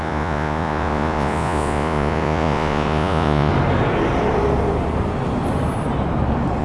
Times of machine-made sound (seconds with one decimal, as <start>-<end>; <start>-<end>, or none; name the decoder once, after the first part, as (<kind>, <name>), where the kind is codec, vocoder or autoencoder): 0.0-3.5 (vocoder, Vocos)